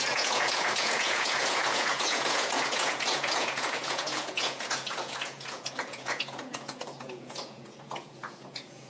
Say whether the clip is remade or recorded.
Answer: remade